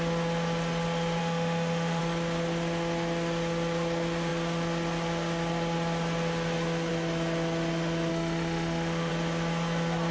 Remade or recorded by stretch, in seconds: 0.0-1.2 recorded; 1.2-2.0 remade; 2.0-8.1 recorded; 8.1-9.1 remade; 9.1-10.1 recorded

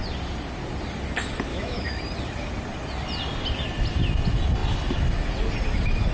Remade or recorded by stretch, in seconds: 0.0-1.5 recorded; 1.5-2.0 remade; 2.0-6.1 recorded

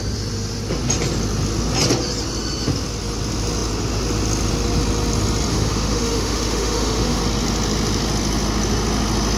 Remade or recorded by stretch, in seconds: 0.0-5.5 recorded; 5.5-7.2 remade; 7.2-9.4 recorded

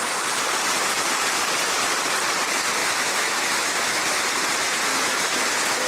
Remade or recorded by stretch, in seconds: 0.0-2.8 recorded; 2.8-4.2 remade; 4.2-4.9 recorded; 4.9-5.5 remade; 5.5-5.9 recorded

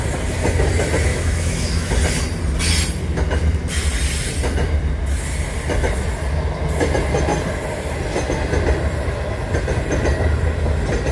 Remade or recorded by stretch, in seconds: 0.0-1.1 recorded; 1.1-1.9 remade; 1.9-11.1 recorded

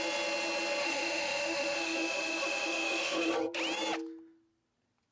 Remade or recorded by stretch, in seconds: 0.0-0.8 recorded; 0.8-3.3 remade; 3.3-5.1 recorded